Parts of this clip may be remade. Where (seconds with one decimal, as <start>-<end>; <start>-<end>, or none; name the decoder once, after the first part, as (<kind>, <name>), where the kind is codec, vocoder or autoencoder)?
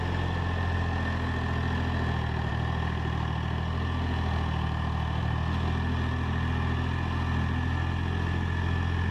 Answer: none